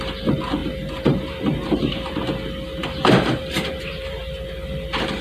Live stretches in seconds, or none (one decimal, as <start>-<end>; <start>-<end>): 0.0-0.6; 2.1-2.8; 4.3-5.2